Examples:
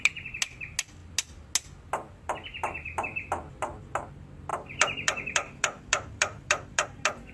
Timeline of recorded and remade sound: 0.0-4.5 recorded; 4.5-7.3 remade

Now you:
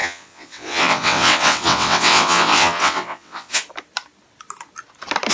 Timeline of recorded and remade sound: 0.0-3.6 remade; 3.6-5.3 recorded

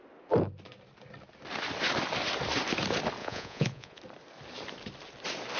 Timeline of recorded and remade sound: 0.0-3.2 recorded; 3.2-4.0 remade; 4.0-5.6 recorded

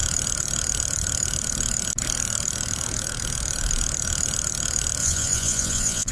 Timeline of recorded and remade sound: 0.0-5.0 recorded; 5.0-6.1 remade

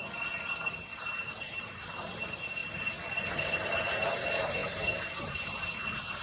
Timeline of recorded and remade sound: 0.0-0.9 recorded; 0.9-2.1 remade; 2.1-6.2 recorded

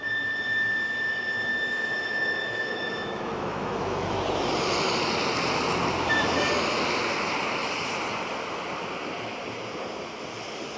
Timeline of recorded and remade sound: 0.0-1.5 recorded; 1.5-4.2 remade; 4.2-10.8 recorded